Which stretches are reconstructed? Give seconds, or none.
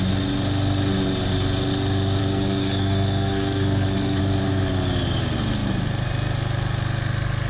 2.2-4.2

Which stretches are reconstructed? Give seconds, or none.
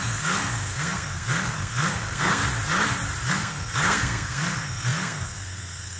0.0-2.4; 3.3-6.0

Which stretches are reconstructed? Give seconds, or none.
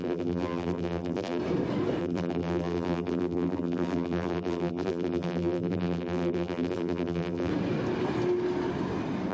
0.0-1.4; 2.0-7.5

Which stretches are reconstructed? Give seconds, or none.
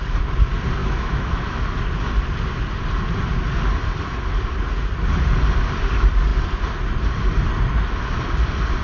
0.8-1.6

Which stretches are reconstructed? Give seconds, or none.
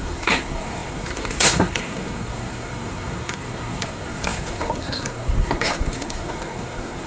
0.0-7.1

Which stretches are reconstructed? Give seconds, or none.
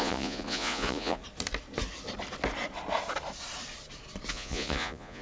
0.0-1.2; 4.3-5.2